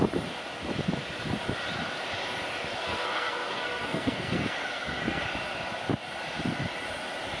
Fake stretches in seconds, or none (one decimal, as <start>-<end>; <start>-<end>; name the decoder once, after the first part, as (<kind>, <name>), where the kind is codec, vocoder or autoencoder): 2.7-5.2 (codec, SNAC)